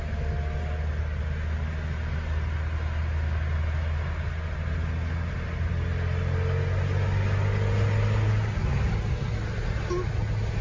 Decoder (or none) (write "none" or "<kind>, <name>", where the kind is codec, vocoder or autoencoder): none